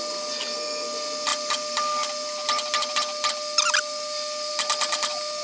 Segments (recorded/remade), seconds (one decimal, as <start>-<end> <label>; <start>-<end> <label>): 0.0-5.4 recorded